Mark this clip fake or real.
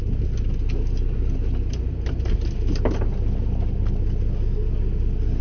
real